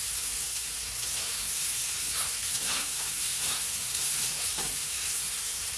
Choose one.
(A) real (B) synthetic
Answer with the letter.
B